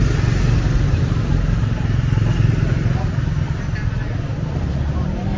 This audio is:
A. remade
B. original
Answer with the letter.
B